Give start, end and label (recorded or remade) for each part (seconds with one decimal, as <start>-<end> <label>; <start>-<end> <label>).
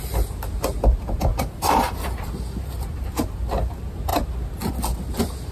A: 0.0-1.3 recorded; 1.3-2.3 remade; 2.3-5.5 recorded